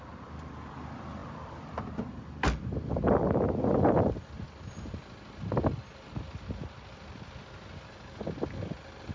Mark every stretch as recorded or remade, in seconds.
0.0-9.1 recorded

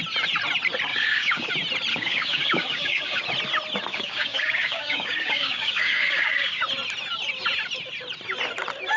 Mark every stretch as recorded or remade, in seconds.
0.0-0.9 recorded; 0.9-1.5 remade; 1.5-1.9 recorded; 1.9-3.2 remade; 3.2-3.9 recorded; 3.9-6.6 remade; 6.6-9.0 recorded

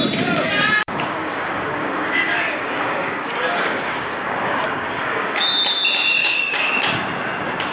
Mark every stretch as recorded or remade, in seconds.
0.0-0.8 recorded; 0.8-5.4 remade; 5.4-6.2 recorded; 6.2-6.7 remade; 6.7-7.7 recorded

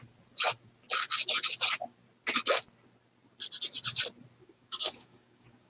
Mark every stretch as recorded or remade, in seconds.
0.0-4.4 recorded; 4.4-5.7 remade

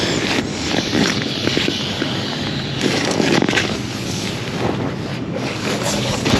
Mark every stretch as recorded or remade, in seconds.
0.0-0.5 recorded; 0.5-4.3 remade; 4.3-5.1 recorded; 5.1-6.4 remade